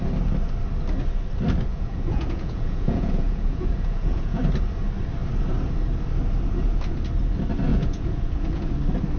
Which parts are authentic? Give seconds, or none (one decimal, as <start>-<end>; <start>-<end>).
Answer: 0.0-1.7; 4.4-7.7; 8.7-9.2